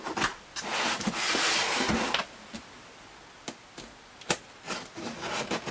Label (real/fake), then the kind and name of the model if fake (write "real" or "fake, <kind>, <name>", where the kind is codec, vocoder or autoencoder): real